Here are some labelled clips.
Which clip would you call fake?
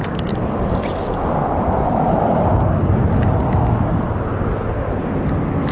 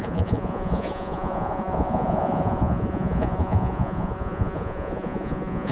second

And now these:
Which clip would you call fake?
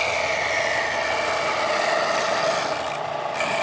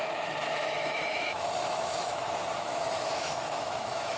second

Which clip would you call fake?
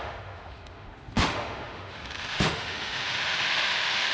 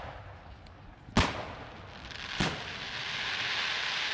first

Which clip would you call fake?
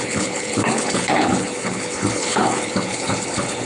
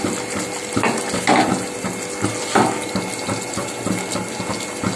first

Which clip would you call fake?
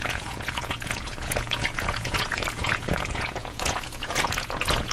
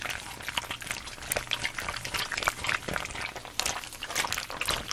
first